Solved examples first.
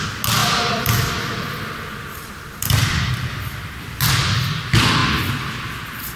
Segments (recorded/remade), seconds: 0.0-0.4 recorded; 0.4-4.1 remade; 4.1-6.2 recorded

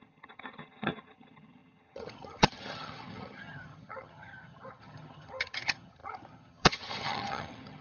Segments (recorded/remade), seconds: 0.0-7.8 remade

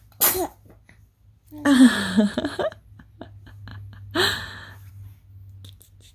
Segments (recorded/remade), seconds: 0.0-6.1 recorded

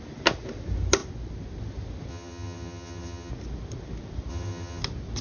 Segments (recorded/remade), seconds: 0.0-2.1 recorded; 2.1-3.3 remade; 3.3-4.3 recorded; 4.3-4.8 remade; 4.8-5.2 recorded

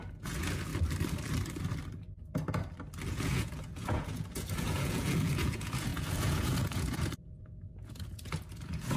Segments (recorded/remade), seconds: 0.0-0.7 remade; 0.7-3.1 recorded; 3.1-9.0 remade

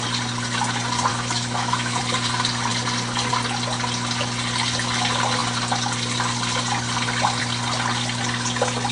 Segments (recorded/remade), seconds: 0.0-1.1 recorded; 1.1-2.0 remade; 2.0-8.9 recorded